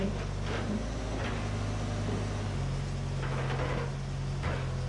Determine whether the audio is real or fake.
real